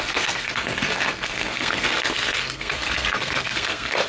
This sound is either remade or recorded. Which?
remade